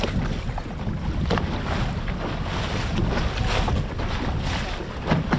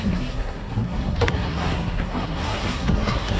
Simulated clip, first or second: second